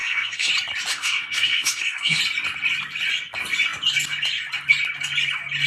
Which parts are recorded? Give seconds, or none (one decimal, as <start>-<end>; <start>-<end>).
0.5-0.9; 2.2-5.7